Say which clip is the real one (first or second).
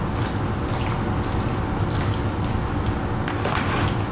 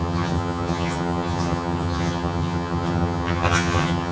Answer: first